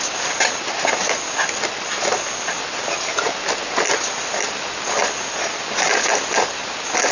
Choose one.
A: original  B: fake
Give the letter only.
A